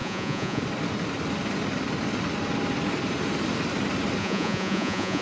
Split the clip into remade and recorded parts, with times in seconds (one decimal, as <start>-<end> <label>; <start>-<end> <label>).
0.0-0.6 remade; 0.6-4.2 recorded; 4.2-5.2 remade